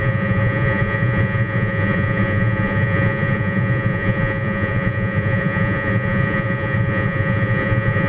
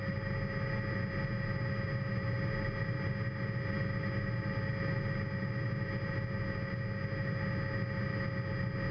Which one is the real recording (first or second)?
second